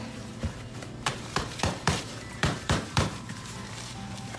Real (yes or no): no